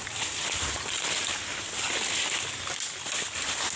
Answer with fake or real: real